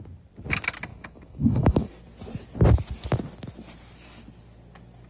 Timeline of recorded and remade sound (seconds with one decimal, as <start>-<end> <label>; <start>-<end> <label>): 0.0-0.9 recorded; 0.9-1.9 remade; 1.9-5.1 recorded